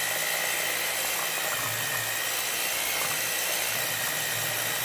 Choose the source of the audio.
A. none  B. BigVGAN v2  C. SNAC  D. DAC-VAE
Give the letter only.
A